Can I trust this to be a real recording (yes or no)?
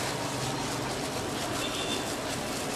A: yes